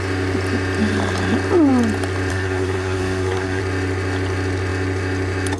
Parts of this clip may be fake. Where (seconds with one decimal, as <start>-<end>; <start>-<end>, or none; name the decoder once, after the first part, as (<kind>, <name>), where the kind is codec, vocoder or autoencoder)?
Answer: 2.3-3.6 (codec, SNAC)